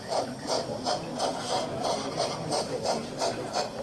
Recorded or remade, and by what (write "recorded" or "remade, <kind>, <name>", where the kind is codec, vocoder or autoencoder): recorded